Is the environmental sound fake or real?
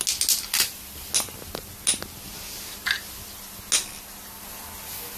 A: real